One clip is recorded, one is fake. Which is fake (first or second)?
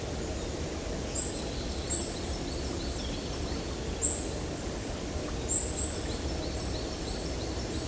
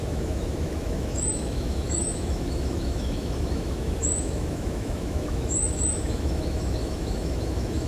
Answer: second